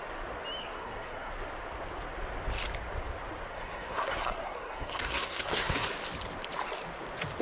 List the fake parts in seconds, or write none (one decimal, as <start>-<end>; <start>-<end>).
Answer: 0.6-1.3; 3.5-5.9